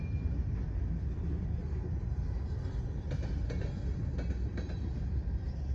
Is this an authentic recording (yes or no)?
yes